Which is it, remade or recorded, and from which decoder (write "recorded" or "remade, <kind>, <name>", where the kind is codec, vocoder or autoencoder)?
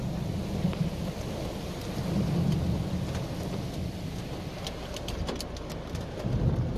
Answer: recorded